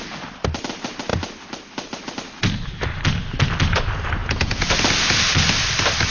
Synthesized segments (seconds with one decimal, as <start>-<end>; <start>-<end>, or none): 4.2-4.7